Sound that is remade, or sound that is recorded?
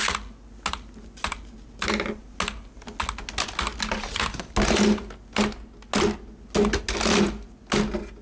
recorded